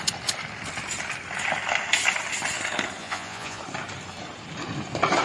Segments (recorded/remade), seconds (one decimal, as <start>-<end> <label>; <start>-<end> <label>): 0.0-3.0 recorded; 3.0-3.6 remade; 3.6-5.2 recorded